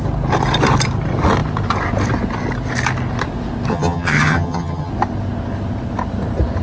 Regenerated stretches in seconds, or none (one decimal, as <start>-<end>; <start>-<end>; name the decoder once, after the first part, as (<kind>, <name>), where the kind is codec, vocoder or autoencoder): 3.7-4.9 (vocoder, HiFi-GAN)